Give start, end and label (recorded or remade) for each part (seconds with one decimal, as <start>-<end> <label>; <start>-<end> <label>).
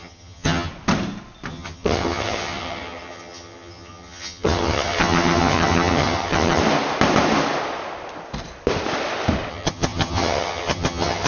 0.0-0.7 remade; 0.7-1.5 recorded; 1.5-6.6 remade; 6.6-9.5 recorded; 9.5-11.3 remade